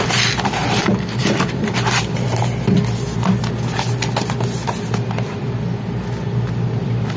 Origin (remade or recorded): recorded